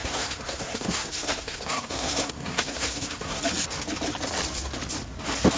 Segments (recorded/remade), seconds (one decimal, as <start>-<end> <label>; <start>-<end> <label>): 0.0-3.4 remade; 3.4-5.6 recorded

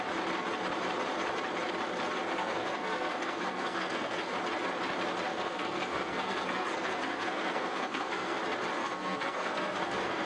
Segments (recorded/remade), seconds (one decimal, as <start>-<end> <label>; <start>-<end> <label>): 0.0-2.3 recorded; 2.3-4.3 remade; 4.3-5.3 recorded; 5.3-8.4 remade; 8.4-8.8 recorded; 8.8-10.3 remade

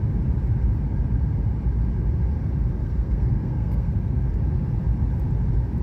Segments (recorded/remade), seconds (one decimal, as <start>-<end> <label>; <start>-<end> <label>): 0.0-2.8 recorded; 2.8-4.3 remade; 4.3-5.8 recorded

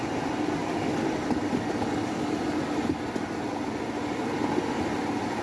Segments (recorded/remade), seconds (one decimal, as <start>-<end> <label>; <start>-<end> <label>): 0.0-5.4 recorded

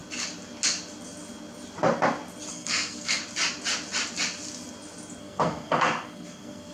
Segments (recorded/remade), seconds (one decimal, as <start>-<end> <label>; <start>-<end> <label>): 0.0-2.5 recorded; 2.5-3.2 remade; 3.2-5.2 recorded; 5.2-6.7 remade

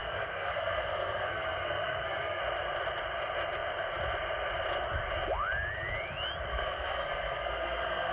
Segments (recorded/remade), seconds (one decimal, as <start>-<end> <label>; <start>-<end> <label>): 0.0-2.4 remade; 2.4-6.5 recorded; 6.5-8.1 remade

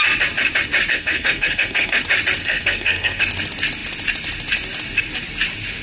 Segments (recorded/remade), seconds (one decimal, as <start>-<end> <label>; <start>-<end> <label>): 0.0-0.9 recorded; 0.9-2.0 remade; 2.0-2.4 recorded; 2.4-3.2 remade; 3.2-5.8 recorded

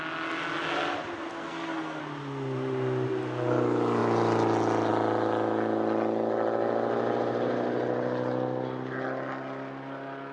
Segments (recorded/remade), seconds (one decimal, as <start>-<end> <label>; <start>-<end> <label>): 0.0-1.3 recorded; 1.3-2.0 remade; 2.0-10.3 recorded